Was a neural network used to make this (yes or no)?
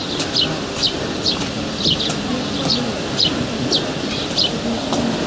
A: no